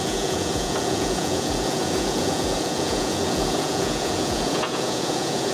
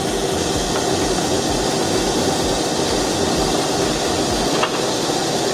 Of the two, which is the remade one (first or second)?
first